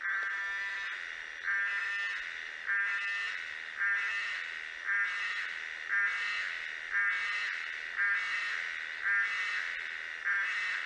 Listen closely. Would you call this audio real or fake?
real